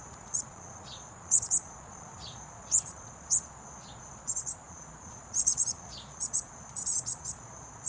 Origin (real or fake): fake